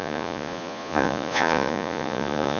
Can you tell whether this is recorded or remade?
remade